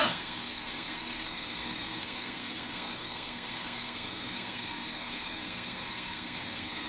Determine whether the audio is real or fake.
fake